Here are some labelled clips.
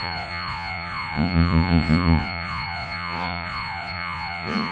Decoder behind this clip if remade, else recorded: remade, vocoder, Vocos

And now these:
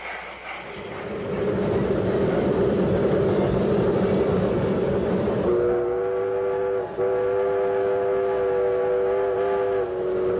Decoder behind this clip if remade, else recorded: recorded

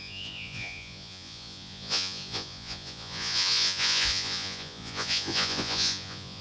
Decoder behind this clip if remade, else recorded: remade, vocoder, Vocos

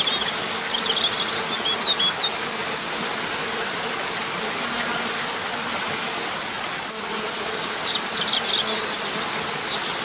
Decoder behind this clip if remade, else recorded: recorded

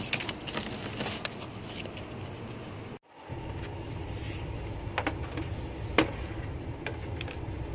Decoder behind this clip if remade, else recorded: recorded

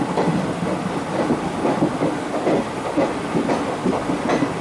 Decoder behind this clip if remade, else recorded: recorded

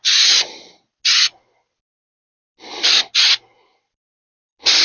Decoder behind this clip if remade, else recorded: recorded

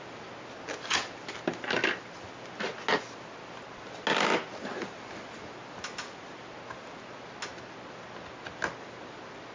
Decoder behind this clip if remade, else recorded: recorded